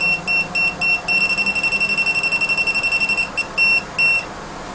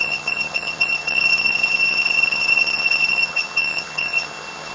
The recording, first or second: first